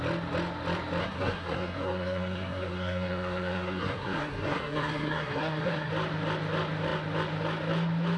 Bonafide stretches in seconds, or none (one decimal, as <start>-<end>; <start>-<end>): 0.0-1.0; 5.9-8.2